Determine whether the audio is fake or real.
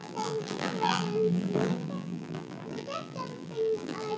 fake